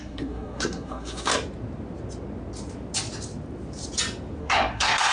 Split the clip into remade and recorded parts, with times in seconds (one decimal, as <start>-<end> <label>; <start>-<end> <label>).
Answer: 0.0-1.3 remade; 1.3-4.4 recorded; 4.4-5.1 remade